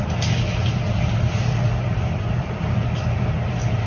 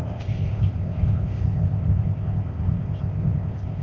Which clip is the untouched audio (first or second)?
first